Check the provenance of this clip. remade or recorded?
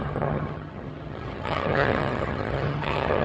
remade